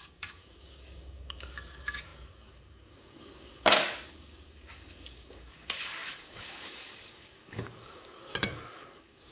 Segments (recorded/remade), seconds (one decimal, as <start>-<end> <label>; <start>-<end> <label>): 0.0-9.3 remade